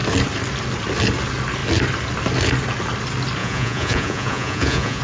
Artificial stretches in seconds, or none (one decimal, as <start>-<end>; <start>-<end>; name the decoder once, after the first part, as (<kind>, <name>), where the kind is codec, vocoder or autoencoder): 3.4-5.0 (vocoder, Vocos)